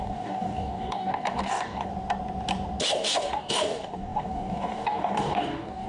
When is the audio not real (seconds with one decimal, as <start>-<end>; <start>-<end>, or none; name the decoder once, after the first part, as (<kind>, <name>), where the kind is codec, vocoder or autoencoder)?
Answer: 0.0-1.9 (codec, DAC); 2.9-5.9